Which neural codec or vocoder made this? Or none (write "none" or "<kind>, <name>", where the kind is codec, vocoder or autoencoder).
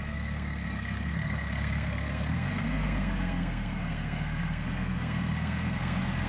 codec, SNAC